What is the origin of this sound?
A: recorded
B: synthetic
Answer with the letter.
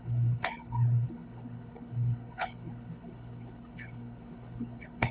B